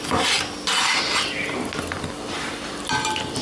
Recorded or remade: recorded